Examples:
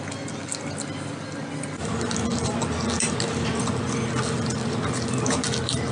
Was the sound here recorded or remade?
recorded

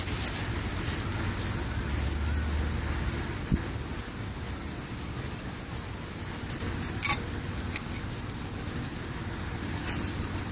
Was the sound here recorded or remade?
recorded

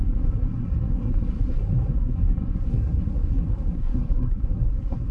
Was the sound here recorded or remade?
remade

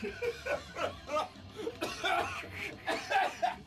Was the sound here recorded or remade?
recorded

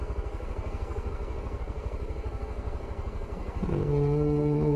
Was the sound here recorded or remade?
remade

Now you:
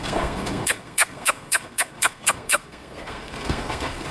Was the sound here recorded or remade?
remade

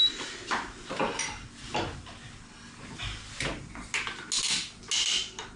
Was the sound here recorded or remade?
recorded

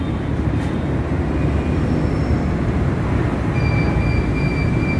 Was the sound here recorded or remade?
recorded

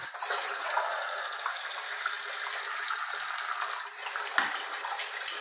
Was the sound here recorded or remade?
recorded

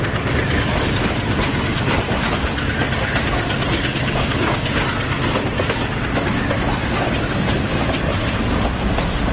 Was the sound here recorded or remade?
recorded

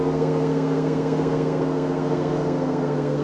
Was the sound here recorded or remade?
remade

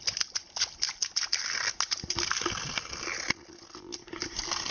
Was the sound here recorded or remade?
recorded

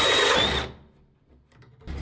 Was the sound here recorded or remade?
recorded